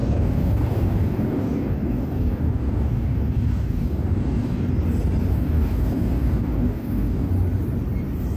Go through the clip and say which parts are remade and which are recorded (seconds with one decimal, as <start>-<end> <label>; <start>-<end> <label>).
0.0-4.7 remade; 4.7-5.3 recorded; 5.3-7.3 remade; 7.3-8.4 recorded